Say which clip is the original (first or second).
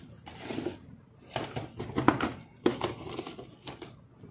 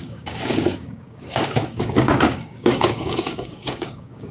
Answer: first